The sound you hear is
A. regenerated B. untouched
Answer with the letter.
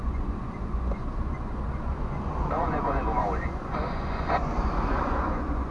A